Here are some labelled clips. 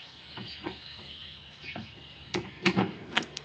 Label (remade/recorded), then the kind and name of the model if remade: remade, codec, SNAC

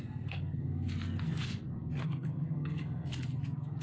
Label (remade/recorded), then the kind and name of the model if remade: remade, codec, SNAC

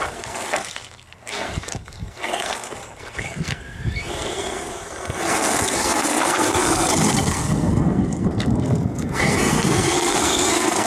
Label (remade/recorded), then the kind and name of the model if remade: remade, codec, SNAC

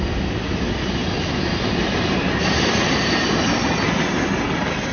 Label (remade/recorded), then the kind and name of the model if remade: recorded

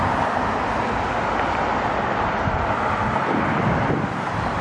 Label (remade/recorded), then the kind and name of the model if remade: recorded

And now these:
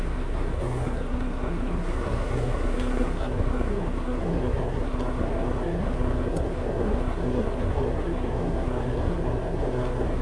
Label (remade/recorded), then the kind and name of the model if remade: remade, codec, SNAC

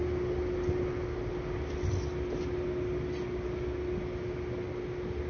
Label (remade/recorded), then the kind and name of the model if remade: recorded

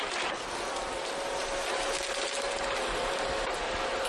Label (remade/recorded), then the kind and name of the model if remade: recorded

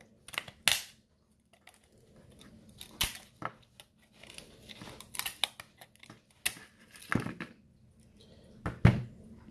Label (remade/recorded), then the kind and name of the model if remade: recorded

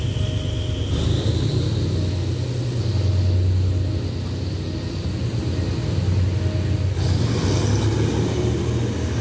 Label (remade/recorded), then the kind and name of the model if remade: recorded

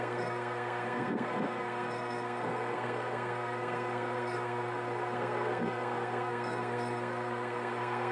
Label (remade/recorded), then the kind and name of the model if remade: remade, codec, SNAC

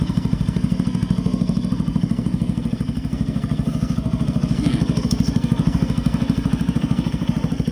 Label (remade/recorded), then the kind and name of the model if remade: remade, codec, SNAC